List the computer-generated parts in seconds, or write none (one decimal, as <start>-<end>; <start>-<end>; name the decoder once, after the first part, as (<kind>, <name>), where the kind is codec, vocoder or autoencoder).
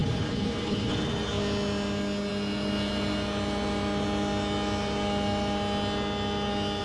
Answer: 0.0-0.9 (codec, HILCodec)